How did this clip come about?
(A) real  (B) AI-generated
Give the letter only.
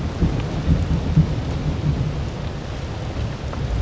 A